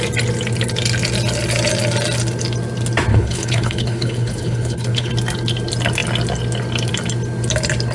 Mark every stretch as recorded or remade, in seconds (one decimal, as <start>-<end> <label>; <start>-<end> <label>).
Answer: 0.0-3.1 recorded; 3.1-5.1 remade; 5.1-7.9 recorded